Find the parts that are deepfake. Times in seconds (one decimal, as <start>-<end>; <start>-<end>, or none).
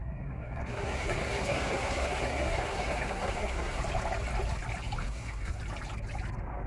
0.0-3.8; 5.0-5.6